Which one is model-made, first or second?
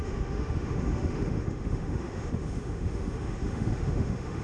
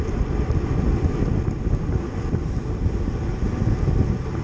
first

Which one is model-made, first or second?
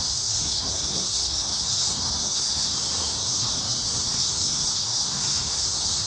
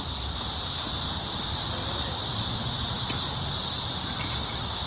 first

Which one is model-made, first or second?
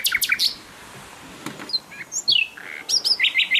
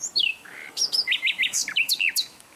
second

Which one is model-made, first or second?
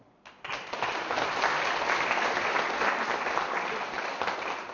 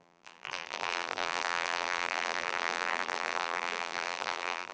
second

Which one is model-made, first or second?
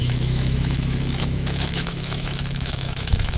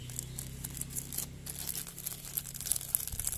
first